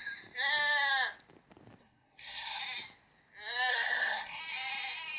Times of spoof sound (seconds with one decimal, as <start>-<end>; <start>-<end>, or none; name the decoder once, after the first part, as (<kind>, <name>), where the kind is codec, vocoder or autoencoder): 1.8-2.6 (codec, SNAC); 3.7-4.4